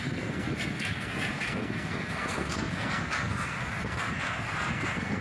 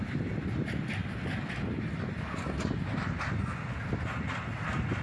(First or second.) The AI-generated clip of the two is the first